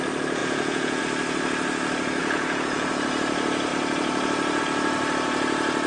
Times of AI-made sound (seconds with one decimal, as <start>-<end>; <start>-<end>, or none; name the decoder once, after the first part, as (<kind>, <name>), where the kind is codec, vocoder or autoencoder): 0.4-1.0 (vocoder, Vocos); 2.2-2.9